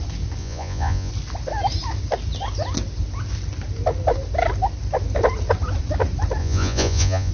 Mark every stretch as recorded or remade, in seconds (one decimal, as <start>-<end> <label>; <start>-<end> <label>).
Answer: 0.0-0.4 recorded; 0.4-1.1 remade; 1.1-6.4 recorded; 6.4-7.3 remade